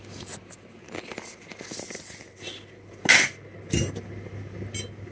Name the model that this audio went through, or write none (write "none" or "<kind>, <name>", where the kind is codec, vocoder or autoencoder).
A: none